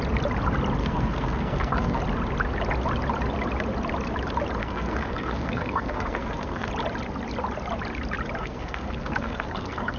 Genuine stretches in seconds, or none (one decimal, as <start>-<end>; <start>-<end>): 0.0-0.8; 2.0-4.6; 6.7-8.4